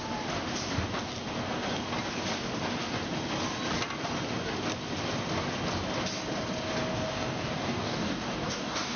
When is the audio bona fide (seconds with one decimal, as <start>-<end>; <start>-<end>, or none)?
0.0-6.9